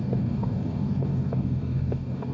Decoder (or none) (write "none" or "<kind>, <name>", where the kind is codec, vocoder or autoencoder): codec, DAC